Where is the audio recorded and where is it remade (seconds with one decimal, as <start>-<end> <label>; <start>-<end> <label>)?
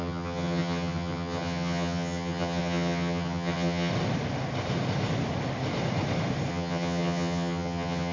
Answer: 0.0-3.9 remade; 3.9-6.5 recorded; 6.5-8.1 remade